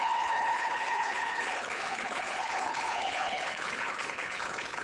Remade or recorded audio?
remade